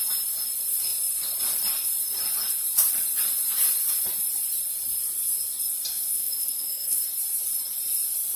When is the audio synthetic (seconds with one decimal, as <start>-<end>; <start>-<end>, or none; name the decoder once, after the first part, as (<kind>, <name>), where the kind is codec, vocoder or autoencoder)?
5.9-7.0 (codec, SNAC)